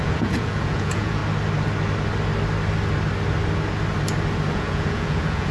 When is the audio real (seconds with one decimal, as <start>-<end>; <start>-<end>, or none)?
1.2-4.5